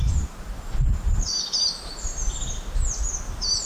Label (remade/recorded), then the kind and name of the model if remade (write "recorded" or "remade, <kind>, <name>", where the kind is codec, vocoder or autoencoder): recorded